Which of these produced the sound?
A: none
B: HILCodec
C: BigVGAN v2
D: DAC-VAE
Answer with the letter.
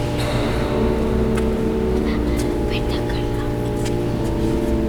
A